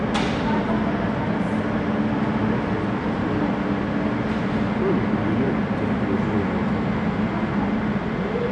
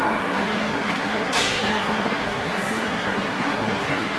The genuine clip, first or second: first